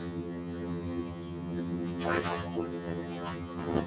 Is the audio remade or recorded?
remade